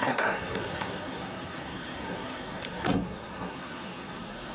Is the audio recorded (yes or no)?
no